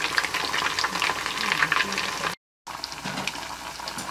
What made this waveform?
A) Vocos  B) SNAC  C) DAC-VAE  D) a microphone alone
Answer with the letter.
D